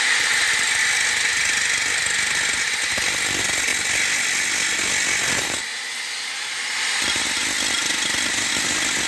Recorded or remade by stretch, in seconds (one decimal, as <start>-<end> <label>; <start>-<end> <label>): 0.0-9.1 recorded